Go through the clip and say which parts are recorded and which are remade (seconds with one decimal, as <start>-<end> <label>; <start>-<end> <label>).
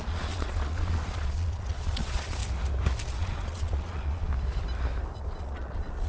0.0-2.4 remade; 2.4-3.1 recorded; 3.1-4.3 remade; 4.3-5.4 recorded; 5.4-6.1 remade